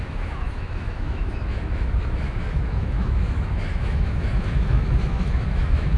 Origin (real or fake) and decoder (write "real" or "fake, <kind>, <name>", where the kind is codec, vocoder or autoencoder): fake, autoencoder, DAC-VAE